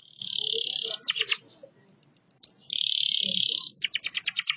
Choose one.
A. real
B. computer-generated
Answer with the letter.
A